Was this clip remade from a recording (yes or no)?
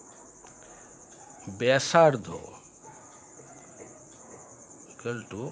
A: yes